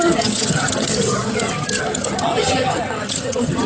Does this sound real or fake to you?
fake